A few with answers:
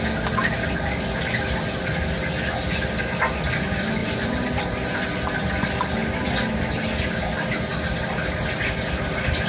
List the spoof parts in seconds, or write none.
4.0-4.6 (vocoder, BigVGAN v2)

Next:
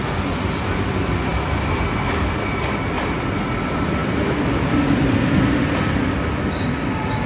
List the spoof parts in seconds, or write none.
none

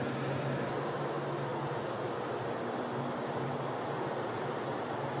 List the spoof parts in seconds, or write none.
1.5-4.6 (vocoder, BigVGAN v2)

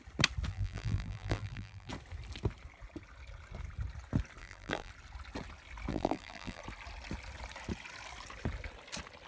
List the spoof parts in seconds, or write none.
0.5-1.9 (vocoder, BigVGAN v2); 4.4-4.9; 5.9-6.6

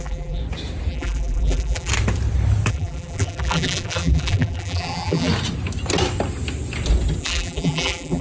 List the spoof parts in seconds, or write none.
0.0-0.4 (vocoder, BigVGAN v2); 0.9-1.9; 2.7-5.3; 7.2-8.2